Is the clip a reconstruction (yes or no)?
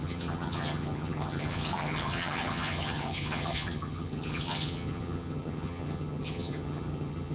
yes